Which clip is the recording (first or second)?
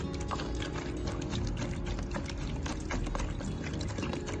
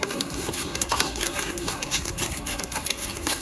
first